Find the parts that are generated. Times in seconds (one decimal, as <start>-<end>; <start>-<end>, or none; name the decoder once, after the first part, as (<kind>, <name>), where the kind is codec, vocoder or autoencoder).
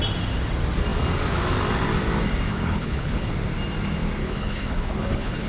2.5-3.3 (codec, HILCodec); 4.2-5.5